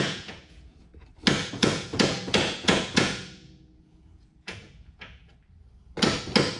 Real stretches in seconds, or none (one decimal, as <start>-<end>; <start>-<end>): 0.9-1.5; 5.3-6.6